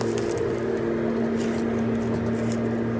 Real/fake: real